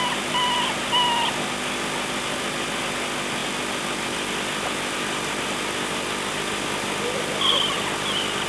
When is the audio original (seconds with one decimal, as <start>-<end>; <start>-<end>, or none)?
0.0-8.5